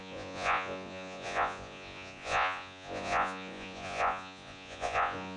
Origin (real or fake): fake